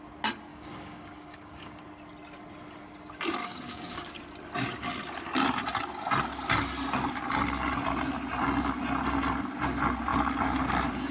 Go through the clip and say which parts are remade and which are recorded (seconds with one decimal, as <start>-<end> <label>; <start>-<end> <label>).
0.0-0.5 recorded; 0.5-1.8 remade; 1.8-3.4 recorded; 3.4-4.2 remade; 4.2-11.1 recorded